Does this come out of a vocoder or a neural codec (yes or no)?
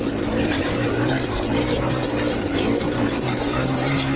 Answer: no